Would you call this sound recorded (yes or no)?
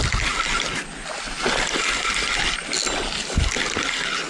yes